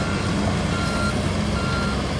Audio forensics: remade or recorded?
recorded